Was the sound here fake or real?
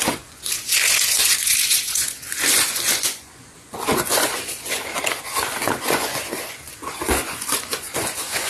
fake